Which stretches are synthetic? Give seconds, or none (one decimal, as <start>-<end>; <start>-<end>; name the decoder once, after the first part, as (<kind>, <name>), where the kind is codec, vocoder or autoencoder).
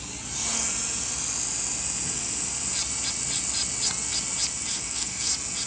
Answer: 4.7-5.3 (codec, SNAC)